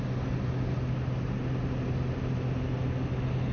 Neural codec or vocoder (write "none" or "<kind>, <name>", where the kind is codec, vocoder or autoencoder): none